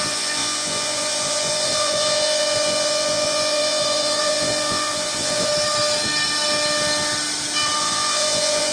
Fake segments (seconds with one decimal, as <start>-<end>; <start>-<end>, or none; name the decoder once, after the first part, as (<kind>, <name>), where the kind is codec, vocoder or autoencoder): 0.0-5.5 (vocoder, Vocos); 7.8-8.7